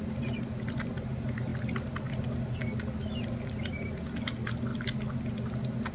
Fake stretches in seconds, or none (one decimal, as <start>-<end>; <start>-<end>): none